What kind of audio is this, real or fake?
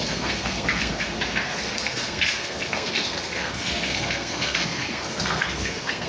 fake